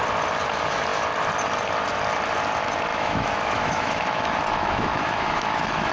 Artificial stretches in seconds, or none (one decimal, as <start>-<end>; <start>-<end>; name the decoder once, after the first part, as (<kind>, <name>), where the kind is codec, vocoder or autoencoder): 2.9-5.9 (autoencoder, DAC-VAE)